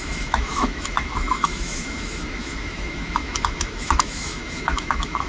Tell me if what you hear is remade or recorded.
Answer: remade